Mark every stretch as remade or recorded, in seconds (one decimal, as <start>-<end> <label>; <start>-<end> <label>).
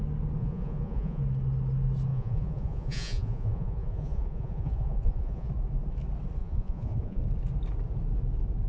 0.0-0.4 recorded; 0.4-1.2 remade; 1.2-2.1 recorded; 2.1-5.5 remade; 5.5-6.4 recorded; 6.4-7.2 remade; 7.2-8.7 recorded